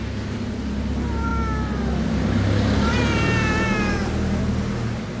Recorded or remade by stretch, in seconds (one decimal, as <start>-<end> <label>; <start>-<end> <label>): 0.0-5.2 recorded